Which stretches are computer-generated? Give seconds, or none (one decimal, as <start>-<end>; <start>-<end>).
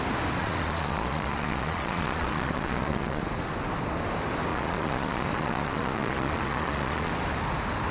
0.4-3.2; 4.5-7.1